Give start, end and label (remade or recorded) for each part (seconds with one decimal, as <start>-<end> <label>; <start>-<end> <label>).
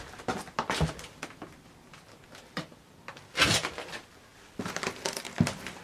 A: 0.0-5.8 recorded